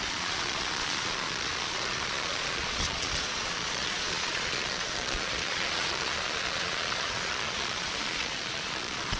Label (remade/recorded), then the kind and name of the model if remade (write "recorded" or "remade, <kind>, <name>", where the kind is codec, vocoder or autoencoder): remade, vocoder, Vocos